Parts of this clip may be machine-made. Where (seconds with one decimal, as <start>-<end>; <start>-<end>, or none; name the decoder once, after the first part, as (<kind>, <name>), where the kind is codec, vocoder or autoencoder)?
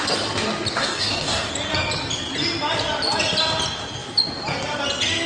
0.7-1.5 (codec, DAC)